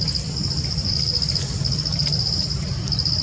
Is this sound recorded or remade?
recorded